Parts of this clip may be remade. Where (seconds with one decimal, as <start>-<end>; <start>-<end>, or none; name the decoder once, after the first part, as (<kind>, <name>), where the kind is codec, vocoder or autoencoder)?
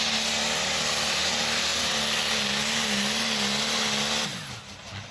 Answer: none